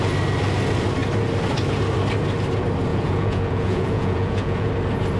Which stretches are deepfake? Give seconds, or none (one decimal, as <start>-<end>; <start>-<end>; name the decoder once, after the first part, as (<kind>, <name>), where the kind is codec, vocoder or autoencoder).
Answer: 2.9-4.7 (vocoder, Vocos)